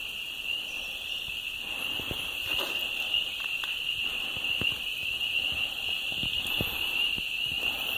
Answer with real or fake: real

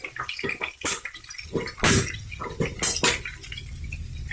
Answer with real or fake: real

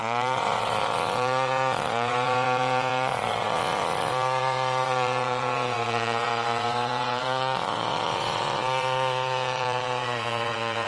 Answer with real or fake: fake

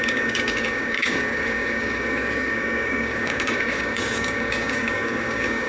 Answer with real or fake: fake